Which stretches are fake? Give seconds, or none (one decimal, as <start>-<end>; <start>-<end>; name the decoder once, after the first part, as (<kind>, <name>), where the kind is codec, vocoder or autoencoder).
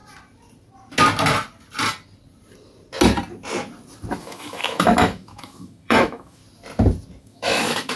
4.2-6.4 (autoencoder, DAC-VAE); 7.2-8.0